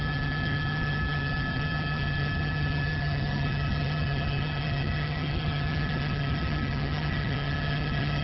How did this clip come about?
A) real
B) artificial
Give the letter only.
B